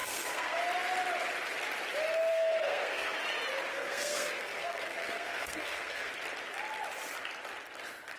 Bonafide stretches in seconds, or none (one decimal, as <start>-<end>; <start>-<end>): 0.6-2.3; 3.2-3.7; 6.1-8.2